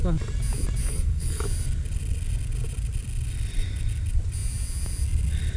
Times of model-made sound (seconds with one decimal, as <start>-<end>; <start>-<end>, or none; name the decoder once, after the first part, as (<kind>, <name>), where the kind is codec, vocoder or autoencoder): 0.8-1.4 (codec, SNAC)